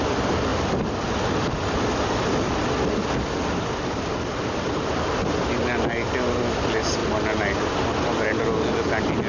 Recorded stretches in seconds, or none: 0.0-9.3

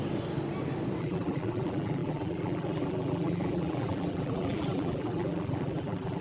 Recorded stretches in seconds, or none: 0.0-1.0